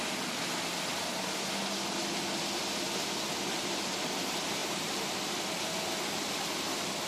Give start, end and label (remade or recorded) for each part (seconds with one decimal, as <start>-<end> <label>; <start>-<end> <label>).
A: 0.0-4.6 recorded; 4.6-5.1 remade; 5.1-7.1 recorded